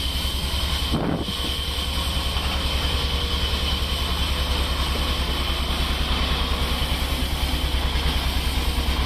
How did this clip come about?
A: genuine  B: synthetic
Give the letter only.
A